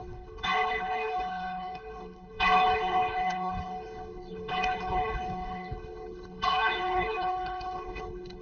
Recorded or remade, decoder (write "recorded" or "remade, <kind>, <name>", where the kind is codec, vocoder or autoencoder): remade, codec, HILCodec